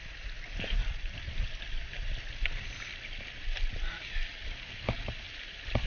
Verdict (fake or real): real